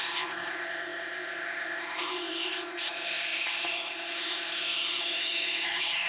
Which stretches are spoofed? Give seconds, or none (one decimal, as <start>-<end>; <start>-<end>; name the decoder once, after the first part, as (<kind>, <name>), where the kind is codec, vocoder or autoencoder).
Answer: 0.0-6.1 (codec, ZipCodec)